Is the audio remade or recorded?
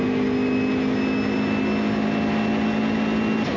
recorded